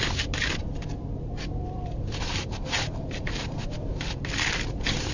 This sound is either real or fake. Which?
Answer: fake